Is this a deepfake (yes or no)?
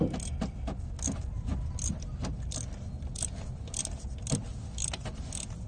no